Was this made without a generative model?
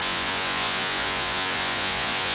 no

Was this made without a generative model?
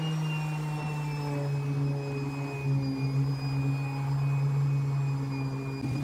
yes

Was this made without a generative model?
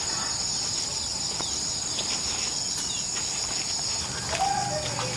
yes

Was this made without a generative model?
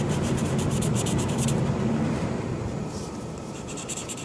no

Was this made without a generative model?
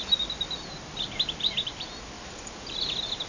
yes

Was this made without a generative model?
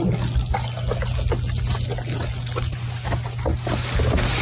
yes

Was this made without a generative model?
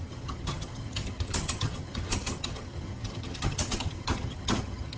no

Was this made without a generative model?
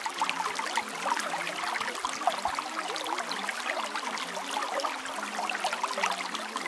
yes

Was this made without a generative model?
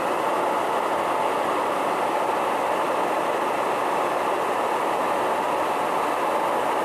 yes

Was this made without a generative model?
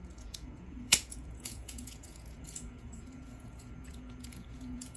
no